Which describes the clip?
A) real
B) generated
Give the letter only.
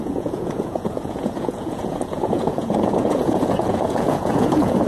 B